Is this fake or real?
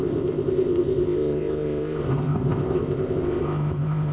fake